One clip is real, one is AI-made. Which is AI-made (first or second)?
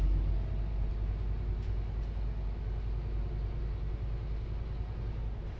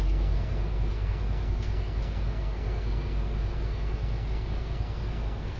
second